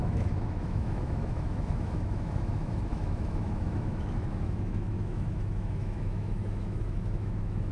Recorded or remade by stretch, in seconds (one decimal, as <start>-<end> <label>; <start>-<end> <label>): 0.0-7.7 remade

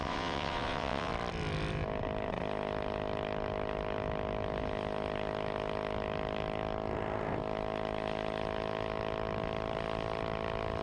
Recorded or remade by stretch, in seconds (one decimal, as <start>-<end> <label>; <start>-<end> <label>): 0.0-1.1 remade; 1.1-10.8 recorded

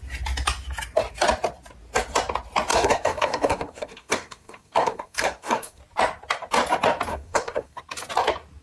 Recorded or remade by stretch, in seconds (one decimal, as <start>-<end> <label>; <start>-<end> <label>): 0.0-2.7 recorded; 2.7-5.8 remade; 5.8-7.1 recorded; 7.1-7.8 remade; 7.8-8.6 recorded

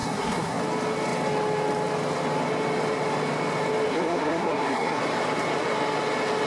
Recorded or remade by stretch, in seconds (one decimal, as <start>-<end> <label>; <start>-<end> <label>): 0.0-0.6 remade; 0.6-3.9 recorded; 3.9-5.0 remade; 5.0-6.5 recorded

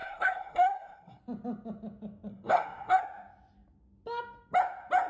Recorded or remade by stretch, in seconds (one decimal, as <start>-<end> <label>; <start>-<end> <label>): 0.0-1.2 remade; 1.2-2.3 recorded; 2.3-3.0 remade; 3.0-5.1 recorded

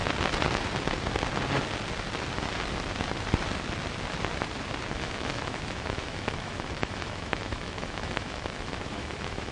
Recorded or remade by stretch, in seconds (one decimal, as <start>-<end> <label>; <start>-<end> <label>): 0.0-4.9 recorded; 4.9-9.5 remade